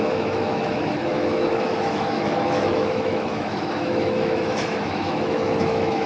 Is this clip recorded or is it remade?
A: remade